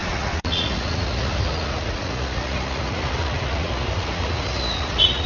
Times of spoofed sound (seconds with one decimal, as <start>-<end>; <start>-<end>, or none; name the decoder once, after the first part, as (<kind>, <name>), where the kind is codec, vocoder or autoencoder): 0.0-5.3 (vocoder, Vocos)